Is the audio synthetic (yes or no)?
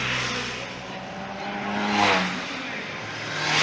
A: no